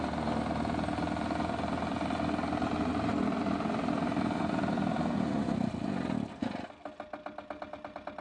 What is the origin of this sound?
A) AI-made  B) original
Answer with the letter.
B